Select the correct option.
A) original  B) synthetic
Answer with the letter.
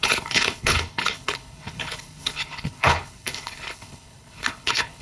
B